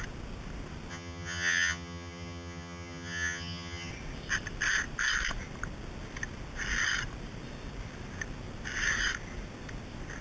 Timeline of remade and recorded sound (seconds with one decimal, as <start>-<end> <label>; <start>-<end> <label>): 0.0-0.9 recorded; 0.9-3.9 remade; 3.9-10.2 recorded